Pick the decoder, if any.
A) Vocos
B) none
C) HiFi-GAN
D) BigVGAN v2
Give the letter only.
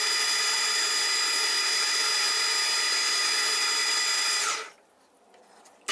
B